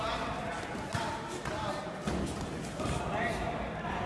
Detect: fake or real real